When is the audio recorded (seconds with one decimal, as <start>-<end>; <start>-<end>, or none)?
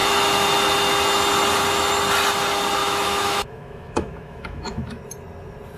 0.0-2.8; 5.0-5.8